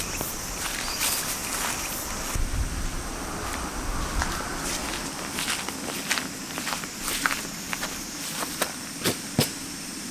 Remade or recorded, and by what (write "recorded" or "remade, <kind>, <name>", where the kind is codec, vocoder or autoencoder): remade, vocoder, BigVGAN v2